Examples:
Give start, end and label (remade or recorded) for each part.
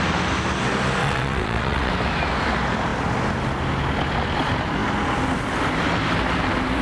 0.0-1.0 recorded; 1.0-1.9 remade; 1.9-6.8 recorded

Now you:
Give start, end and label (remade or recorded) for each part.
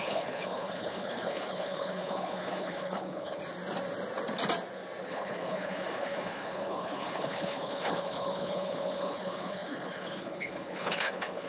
0.0-3.4 remade; 3.4-5.0 recorded; 5.0-11.5 remade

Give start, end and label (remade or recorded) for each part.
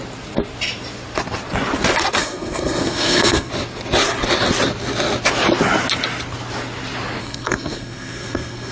0.0-2.2 recorded; 2.2-3.5 remade; 3.5-7.2 recorded; 7.2-8.7 remade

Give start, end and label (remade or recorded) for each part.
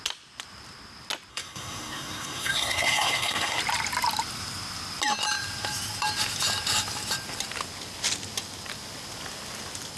0.0-1.3 recorded; 1.3-3.6 remade; 3.6-10.0 recorded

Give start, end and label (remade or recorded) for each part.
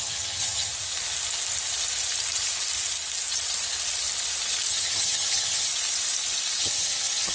0.0-0.7 remade; 0.7-4.7 recorded; 4.7-5.7 remade; 5.7-6.6 recorded; 6.6-7.3 remade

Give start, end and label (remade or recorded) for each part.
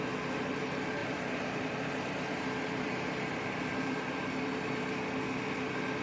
0.0-1.0 recorded; 1.0-4.3 remade; 4.3-6.0 recorded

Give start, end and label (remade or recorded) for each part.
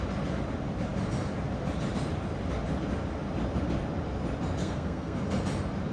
0.0-4.6 recorded; 4.6-5.2 remade; 5.2-5.9 recorded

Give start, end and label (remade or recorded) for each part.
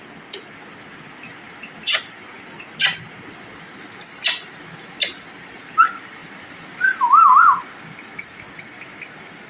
0.0-9.5 recorded